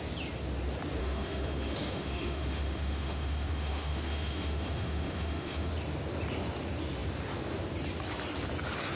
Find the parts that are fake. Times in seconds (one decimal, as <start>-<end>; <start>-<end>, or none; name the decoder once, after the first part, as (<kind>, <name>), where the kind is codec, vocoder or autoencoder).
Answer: 1.0-5.7 (autoencoder, DAC-VAE)